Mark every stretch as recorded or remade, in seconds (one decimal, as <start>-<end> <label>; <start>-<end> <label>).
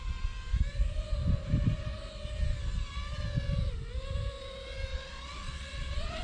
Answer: 0.0-4.9 recorded; 4.9-6.2 remade